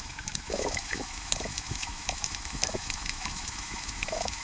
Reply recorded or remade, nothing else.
remade